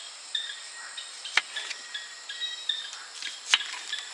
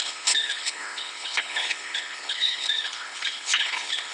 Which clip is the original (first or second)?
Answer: first